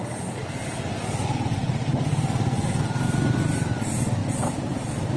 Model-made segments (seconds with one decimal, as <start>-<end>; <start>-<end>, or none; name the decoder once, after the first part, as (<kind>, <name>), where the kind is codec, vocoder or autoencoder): none